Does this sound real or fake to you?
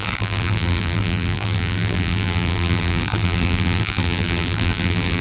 fake